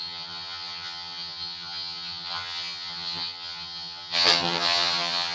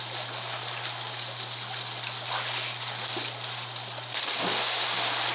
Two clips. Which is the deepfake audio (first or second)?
first